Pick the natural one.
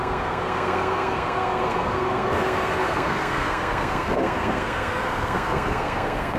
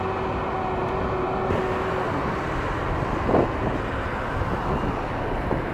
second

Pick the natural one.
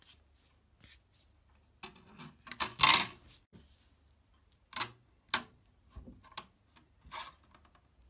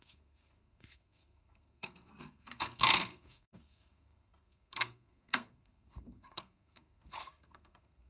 first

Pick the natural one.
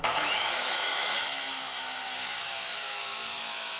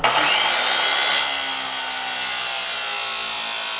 second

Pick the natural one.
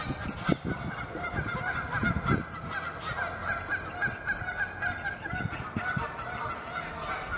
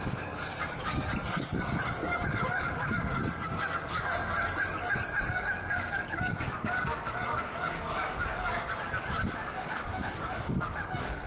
first